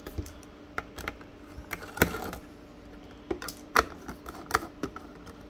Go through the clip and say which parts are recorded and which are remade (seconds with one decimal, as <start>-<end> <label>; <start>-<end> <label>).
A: 0.0-5.5 recorded